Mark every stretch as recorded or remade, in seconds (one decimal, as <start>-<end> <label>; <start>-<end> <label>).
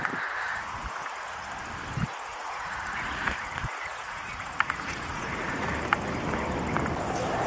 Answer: 0.0-0.5 recorded; 0.5-1.4 remade; 1.4-2.3 recorded; 2.3-5.7 remade; 5.7-7.5 recorded